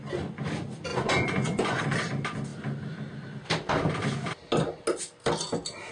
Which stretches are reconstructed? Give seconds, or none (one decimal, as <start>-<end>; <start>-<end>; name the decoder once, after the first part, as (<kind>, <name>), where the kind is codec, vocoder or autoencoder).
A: 0.9-1.8 (vocoder, Vocos)